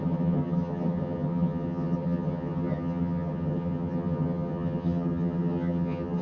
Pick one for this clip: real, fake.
fake